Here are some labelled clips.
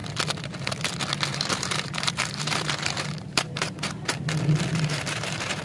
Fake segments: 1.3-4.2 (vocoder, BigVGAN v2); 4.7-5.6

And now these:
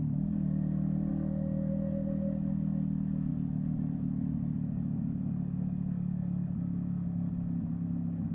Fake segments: none

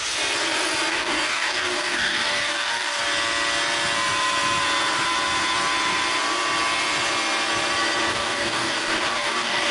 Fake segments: 0.9-3.0 (codec, DAC); 8.1-9.7

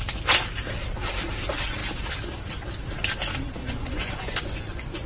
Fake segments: 3.6-5.1 (vocoder, Vocos)

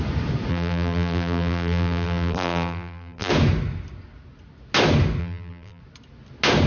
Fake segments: 0.5-3.3 (vocoder, BigVGAN v2); 5.2-5.8